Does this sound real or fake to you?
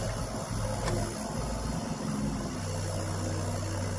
real